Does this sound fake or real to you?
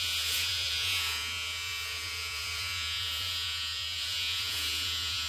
fake